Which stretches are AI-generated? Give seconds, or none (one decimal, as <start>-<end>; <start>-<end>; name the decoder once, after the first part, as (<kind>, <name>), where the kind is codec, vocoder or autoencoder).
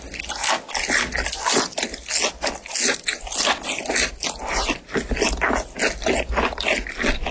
none